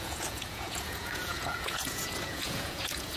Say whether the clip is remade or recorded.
remade